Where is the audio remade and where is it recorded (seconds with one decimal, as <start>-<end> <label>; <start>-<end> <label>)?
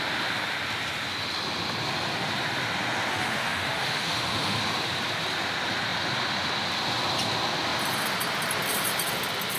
0.0-3.1 recorded; 3.1-4.6 remade; 4.6-9.6 recorded